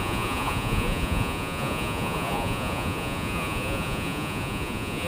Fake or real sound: fake